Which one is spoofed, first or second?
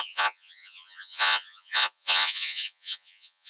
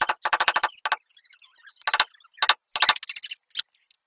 first